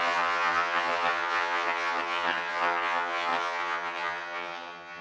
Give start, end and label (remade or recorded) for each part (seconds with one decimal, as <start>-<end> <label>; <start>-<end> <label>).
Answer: 0.0-5.0 remade